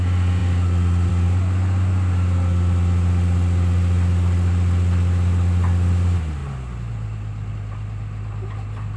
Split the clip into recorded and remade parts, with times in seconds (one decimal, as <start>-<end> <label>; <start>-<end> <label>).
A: 0.0-9.0 recorded